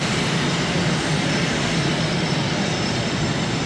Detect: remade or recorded remade